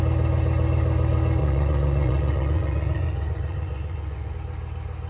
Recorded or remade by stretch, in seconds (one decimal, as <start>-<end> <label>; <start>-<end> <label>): 0.0-1.4 recorded; 1.4-4.3 remade; 4.3-5.1 recorded